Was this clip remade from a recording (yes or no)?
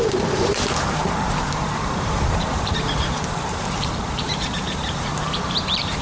yes